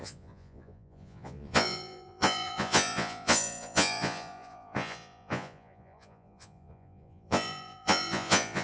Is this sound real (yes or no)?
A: no